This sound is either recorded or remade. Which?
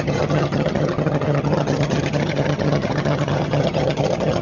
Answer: remade